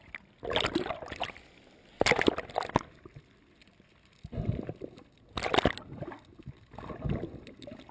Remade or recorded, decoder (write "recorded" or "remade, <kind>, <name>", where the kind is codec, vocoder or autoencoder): recorded